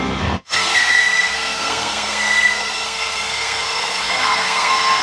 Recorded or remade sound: remade